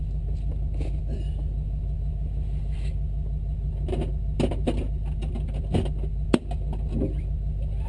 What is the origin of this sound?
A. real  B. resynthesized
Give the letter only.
A